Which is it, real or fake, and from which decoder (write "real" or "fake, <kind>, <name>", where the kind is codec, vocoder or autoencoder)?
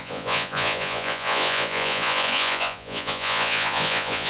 fake, vocoder, Vocos